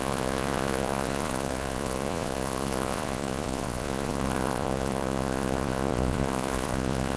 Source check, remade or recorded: remade